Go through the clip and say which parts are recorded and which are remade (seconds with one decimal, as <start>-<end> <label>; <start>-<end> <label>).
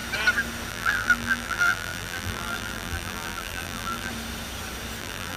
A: 0.0-0.7 recorded; 0.7-4.1 remade; 4.1-5.0 recorded; 5.0-5.4 remade